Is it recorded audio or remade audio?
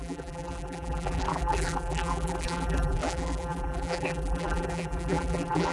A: remade